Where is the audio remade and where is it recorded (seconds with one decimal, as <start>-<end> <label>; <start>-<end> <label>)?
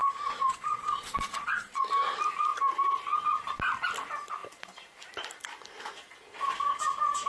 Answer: 0.0-1.8 remade; 1.8-7.3 recorded